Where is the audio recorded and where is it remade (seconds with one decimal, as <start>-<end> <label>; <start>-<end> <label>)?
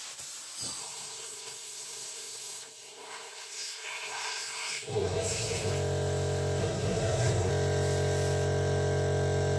0.0-0.8 recorded; 0.8-5.7 remade; 5.7-6.6 recorded; 6.6-7.5 remade; 7.5-9.6 recorded